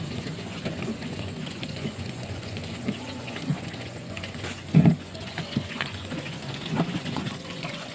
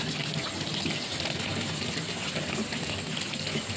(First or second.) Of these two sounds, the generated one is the first